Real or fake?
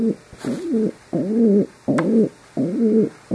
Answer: real